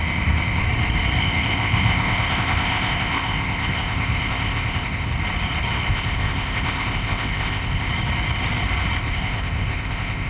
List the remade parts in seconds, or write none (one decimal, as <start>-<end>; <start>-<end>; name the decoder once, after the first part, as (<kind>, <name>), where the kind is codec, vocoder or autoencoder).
0.0-0.6 (codec, ZipCodec); 1.2-5.1; 5.9-7.9; 9.0-10.3

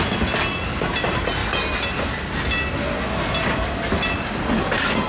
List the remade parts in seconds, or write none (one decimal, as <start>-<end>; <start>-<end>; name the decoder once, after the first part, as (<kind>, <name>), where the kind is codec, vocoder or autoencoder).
none

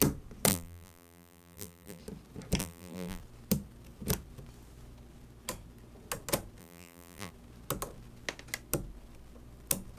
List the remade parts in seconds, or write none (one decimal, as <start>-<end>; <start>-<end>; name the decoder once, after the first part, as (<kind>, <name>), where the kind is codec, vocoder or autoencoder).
0.5-2.0 (vocoder, BigVGAN v2); 2.6-3.2; 6.6-7.3

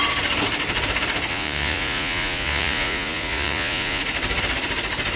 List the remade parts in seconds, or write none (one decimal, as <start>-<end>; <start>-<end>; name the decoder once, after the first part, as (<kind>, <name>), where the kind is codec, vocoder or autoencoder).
1.3-4.0 (vocoder, Vocos)

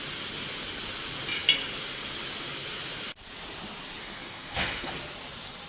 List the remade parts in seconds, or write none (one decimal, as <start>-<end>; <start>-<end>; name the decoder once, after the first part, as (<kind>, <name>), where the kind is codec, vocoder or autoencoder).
4.0-4.9 (codec, SNAC)

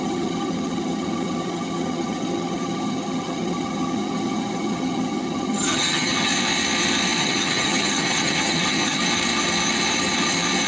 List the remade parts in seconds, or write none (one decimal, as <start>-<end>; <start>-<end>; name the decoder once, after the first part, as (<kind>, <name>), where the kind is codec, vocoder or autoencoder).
0.0-6.3 (vocoder, HiFi-GAN); 7.2-9.0

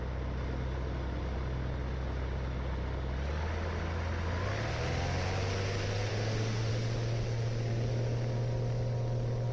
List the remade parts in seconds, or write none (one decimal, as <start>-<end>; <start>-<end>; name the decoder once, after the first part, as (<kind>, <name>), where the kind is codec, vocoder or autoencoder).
6.1-6.7 (autoencoder, DAC-VAE)

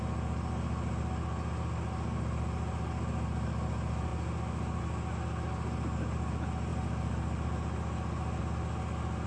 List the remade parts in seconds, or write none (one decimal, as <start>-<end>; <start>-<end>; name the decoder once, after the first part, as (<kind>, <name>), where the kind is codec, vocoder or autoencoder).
none